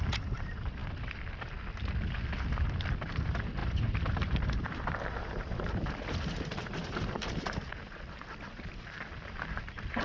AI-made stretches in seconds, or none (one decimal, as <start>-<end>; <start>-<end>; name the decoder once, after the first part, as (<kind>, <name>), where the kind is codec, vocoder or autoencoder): 0.0-0.8 (vocoder, BigVGAN v2); 2.9-10.0